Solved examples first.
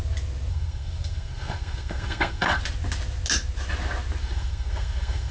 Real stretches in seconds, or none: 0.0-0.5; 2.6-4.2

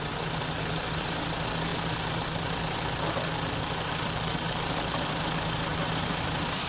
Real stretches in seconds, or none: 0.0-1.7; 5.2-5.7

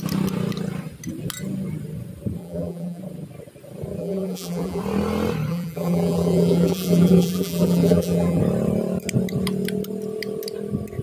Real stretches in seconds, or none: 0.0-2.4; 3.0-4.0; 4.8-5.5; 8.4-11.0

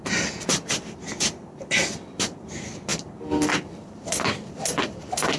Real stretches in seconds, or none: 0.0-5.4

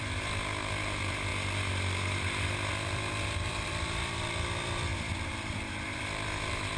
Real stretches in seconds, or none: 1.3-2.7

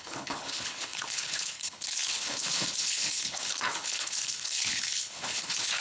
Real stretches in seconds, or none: none

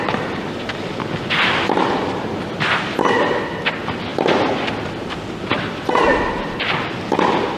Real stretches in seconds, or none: 4.1-4.8

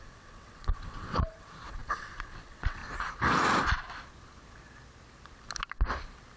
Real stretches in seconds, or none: 2.8-6.4